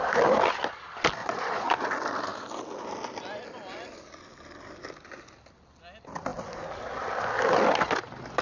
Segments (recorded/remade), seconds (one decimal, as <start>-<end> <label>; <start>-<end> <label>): 0.0-1.2 recorded; 1.2-1.7 remade; 1.7-8.4 recorded